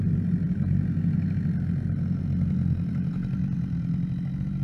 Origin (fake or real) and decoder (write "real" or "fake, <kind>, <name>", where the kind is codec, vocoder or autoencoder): real